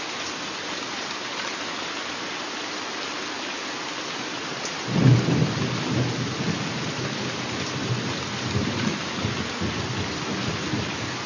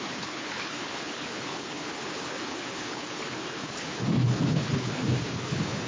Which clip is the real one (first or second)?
first